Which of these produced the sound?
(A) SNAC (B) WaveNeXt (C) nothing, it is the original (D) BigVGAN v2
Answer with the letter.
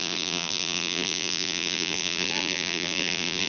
D